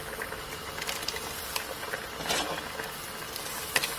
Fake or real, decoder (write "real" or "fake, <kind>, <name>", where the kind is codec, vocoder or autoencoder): real